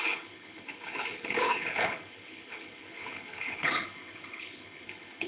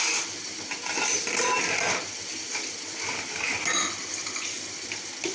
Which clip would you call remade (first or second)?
first